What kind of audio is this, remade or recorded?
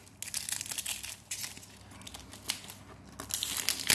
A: recorded